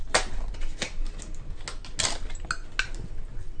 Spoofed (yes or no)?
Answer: no